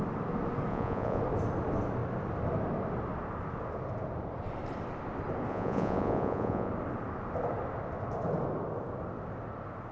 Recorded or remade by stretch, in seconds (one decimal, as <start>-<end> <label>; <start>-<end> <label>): 0.0-0.7 recorded; 0.7-1.2 remade; 1.2-5.5 recorded; 5.5-6.7 remade; 6.7-9.9 recorded